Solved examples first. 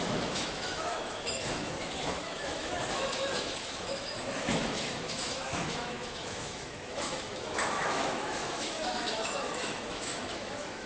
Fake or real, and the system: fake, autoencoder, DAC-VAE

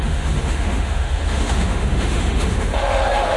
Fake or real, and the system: fake, autoencoder, DAC-VAE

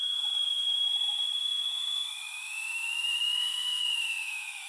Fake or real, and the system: fake, autoencoder, DAC-VAE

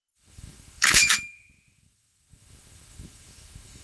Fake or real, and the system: fake, autoencoder, DAC-VAE